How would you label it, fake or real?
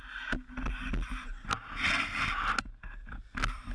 real